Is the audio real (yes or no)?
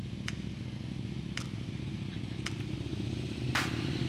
yes